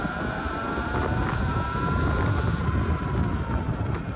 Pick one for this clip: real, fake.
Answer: real